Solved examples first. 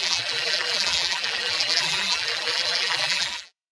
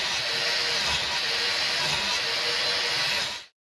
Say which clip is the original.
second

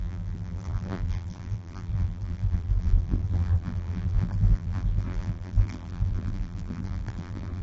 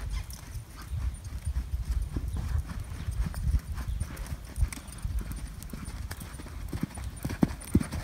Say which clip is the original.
second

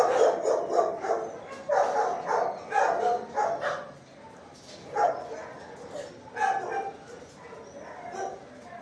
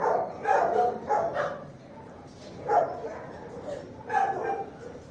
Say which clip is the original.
first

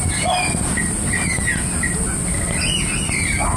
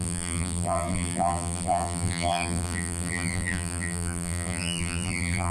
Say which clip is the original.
first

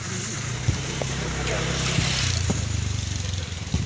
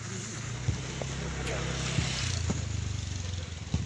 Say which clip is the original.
second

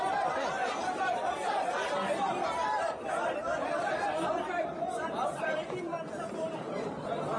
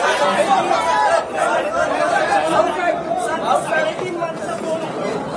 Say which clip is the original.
second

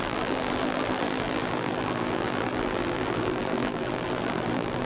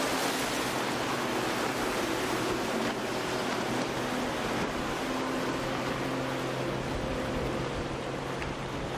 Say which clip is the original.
second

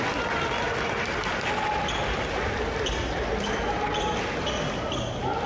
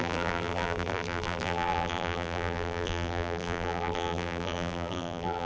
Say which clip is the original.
first